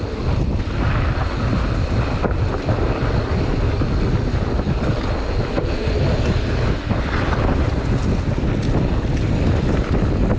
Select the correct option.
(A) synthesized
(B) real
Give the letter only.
B